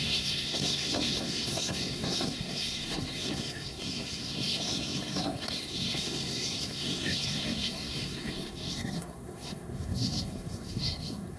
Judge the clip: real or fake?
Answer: fake